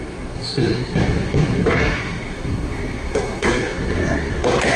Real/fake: fake